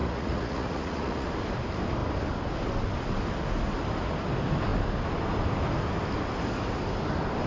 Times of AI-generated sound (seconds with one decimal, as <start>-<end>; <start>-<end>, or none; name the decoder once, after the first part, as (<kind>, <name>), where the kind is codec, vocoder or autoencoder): 0.0-1.3 (vocoder, Vocos)